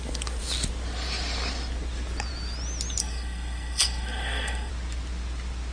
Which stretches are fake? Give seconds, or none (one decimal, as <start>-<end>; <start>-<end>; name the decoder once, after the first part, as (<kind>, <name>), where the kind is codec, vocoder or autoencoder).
3.0-4.7 (codec, SNAC)